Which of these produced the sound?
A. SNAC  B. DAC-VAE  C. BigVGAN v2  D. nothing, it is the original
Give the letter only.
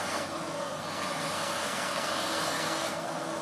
A